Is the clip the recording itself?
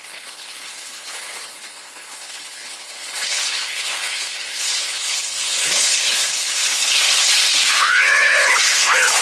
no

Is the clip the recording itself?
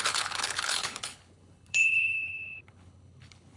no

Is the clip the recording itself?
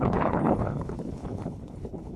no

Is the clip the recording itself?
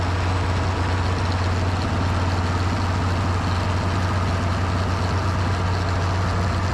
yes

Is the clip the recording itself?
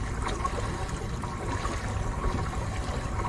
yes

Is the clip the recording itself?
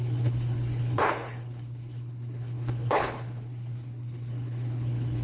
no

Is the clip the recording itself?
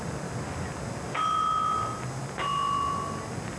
yes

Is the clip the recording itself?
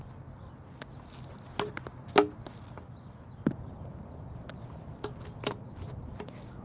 yes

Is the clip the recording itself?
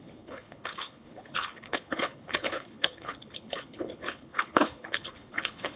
no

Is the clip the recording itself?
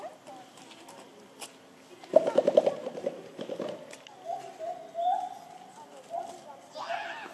yes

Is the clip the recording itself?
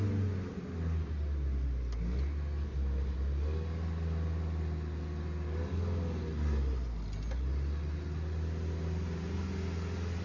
yes